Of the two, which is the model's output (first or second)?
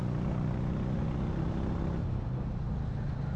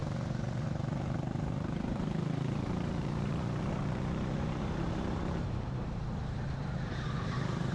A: second